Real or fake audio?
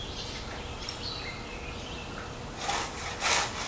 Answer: real